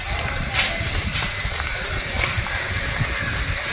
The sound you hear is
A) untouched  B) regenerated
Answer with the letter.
B